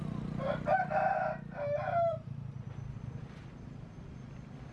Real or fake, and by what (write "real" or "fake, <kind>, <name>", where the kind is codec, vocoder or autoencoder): real